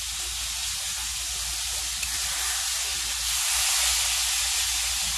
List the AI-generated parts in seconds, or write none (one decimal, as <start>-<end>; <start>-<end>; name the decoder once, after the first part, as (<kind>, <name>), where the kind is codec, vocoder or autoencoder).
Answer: none